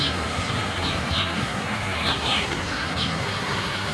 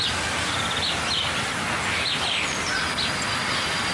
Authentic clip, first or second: second